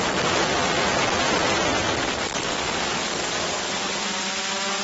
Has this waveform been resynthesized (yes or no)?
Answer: no